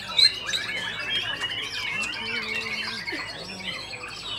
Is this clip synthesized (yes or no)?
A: no